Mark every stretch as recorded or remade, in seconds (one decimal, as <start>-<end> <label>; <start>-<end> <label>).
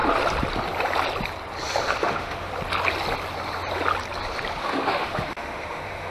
0.0-2.0 recorded; 2.0-2.5 remade; 2.5-4.6 recorded; 4.6-6.1 remade